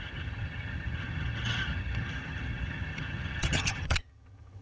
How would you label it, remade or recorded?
remade